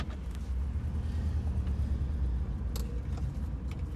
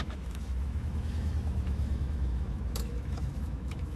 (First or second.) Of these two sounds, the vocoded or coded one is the second